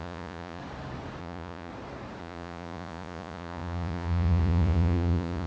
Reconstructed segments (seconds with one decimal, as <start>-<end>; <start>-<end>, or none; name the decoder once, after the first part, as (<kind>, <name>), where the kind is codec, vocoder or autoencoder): 0.0-0.6 (vocoder, Vocos); 1.2-1.7; 2.2-5.5